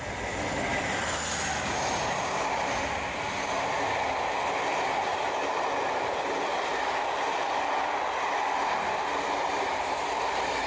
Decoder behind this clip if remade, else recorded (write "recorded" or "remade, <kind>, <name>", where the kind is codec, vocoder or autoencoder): recorded